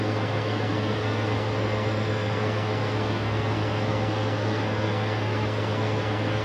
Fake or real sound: fake